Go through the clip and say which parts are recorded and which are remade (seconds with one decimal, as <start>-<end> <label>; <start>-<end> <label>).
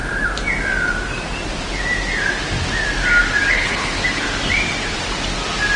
0.0-3.5 recorded; 3.5-4.0 remade; 4.0-5.8 recorded